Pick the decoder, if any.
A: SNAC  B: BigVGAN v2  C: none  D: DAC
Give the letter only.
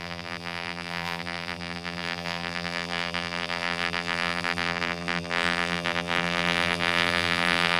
B